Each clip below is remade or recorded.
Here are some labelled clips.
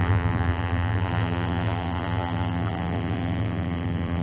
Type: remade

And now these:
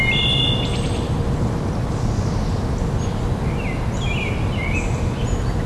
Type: recorded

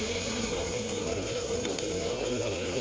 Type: remade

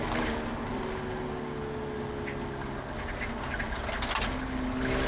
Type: recorded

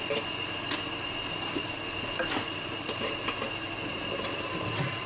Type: recorded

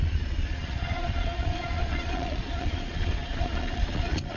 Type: remade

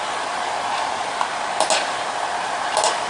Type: recorded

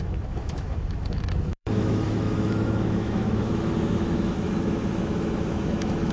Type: remade